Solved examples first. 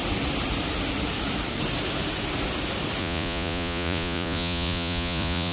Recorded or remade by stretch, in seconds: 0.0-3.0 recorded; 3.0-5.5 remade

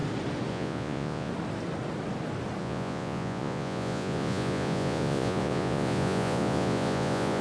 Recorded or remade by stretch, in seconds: 0.0-0.5 recorded; 0.5-1.3 remade; 1.3-2.6 recorded; 2.6-7.4 remade